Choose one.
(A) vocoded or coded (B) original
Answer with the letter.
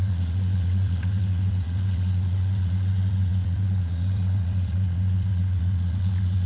A